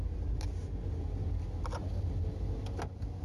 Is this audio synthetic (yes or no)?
no